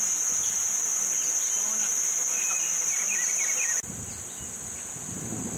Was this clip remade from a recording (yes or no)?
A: no